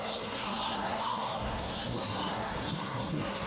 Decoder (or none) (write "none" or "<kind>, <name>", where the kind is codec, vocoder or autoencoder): codec, SNAC